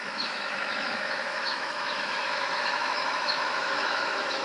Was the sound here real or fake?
fake